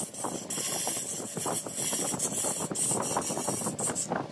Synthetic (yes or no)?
no